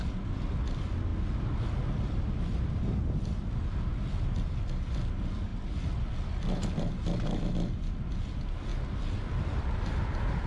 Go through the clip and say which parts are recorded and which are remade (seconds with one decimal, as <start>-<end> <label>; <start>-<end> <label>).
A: 0.0-10.5 recorded